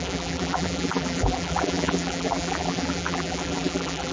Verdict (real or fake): fake